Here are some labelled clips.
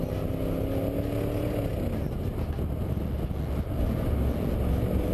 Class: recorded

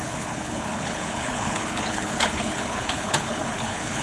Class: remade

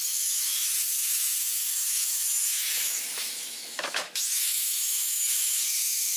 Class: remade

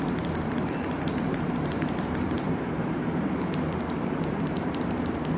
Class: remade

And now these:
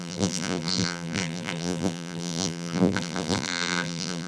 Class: remade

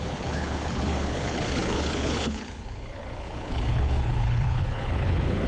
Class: remade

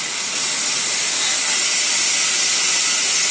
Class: recorded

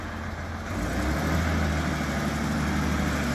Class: recorded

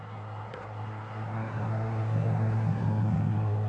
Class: remade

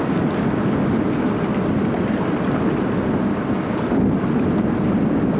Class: recorded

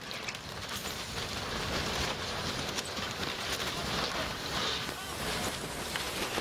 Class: recorded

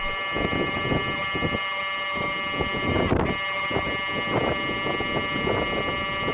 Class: recorded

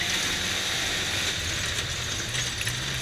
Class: recorded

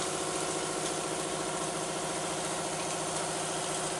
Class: recorded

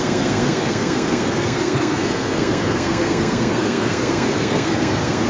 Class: remade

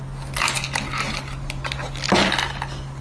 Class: recorded